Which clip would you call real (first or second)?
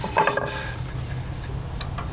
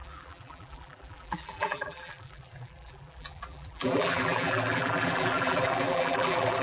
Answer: first